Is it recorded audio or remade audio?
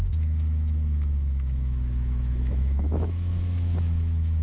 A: remade